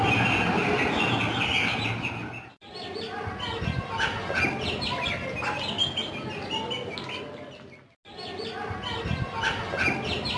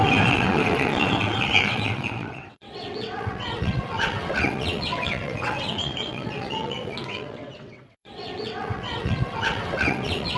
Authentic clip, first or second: first